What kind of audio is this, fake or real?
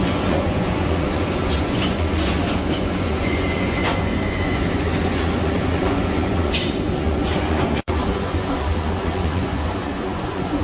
fake